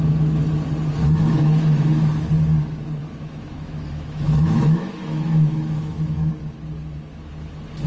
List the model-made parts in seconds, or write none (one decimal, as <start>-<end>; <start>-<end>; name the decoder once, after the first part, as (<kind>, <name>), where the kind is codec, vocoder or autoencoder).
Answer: 1.0-2.3 (autoencoder, DAC-VAE); 3.0-6.3